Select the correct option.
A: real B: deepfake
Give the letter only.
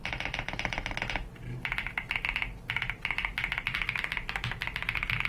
A